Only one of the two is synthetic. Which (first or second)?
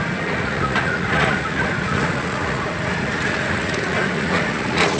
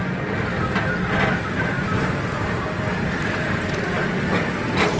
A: first